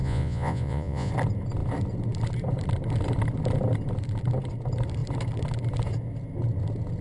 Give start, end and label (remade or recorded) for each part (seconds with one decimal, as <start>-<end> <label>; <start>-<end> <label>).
0.0-1.1 remade; 1.1-7.0 recorded